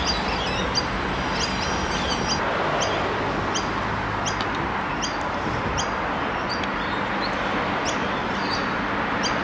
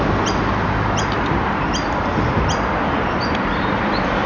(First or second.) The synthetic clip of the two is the second